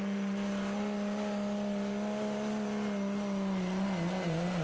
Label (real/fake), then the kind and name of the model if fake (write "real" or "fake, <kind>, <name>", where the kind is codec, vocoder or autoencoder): real